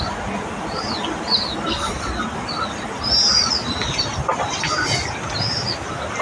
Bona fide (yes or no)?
yes